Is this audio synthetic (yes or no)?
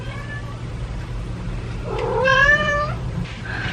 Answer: yes